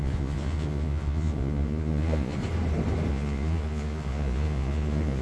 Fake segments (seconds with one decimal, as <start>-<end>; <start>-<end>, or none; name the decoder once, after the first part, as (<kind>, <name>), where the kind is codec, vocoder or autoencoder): 0.0-2.4 (vocoder, Vocos); 3.1-5.2